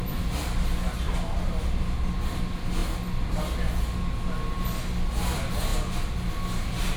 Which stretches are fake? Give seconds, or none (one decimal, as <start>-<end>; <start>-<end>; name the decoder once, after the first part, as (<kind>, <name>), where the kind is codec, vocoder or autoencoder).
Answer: none

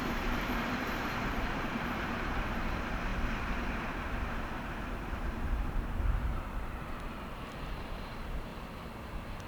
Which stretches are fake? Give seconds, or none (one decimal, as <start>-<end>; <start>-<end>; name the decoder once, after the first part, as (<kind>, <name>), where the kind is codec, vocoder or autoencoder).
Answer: 0.0-8.5 (vocoder, BigVGAN v2)

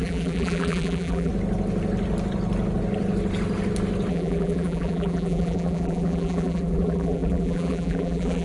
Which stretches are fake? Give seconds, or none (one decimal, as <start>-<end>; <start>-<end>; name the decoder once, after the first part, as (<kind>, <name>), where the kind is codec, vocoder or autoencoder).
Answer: 0.0-1.3 (vocoder, BigVGAN v2); 4.1-8.4

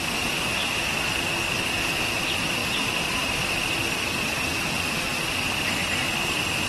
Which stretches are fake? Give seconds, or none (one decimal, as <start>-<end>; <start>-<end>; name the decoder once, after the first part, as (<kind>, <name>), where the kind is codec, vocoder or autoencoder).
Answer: 2.6-3.3 (vocoder, BigVGAN v2)

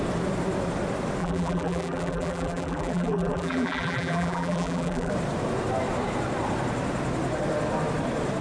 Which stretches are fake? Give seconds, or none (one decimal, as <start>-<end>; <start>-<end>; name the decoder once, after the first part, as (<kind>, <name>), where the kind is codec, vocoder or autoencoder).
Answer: 1.2-5.1 (vocoder, BigVGAN v2)

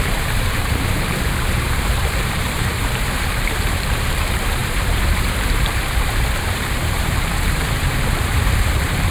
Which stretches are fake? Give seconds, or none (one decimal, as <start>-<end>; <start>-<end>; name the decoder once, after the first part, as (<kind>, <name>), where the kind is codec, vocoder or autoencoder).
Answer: 0.0-9.1 (vocoder, BigVGAN v2)

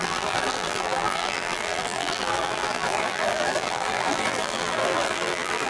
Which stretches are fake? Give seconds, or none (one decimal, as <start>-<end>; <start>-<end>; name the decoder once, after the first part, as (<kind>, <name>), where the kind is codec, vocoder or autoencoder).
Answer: 0.0-5.7 (vocoder, BigVGAN v2)